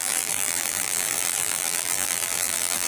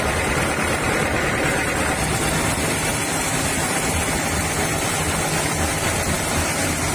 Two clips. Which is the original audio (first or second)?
second